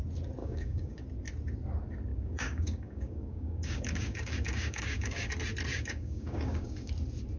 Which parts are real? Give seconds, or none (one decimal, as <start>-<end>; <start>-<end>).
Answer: 0.0-0.4; 1.0-2.1; 5.3-5.7; 6.9-7.4